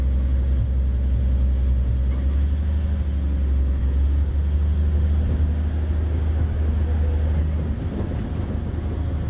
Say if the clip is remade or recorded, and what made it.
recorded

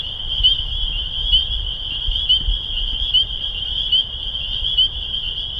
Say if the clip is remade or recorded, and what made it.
recorded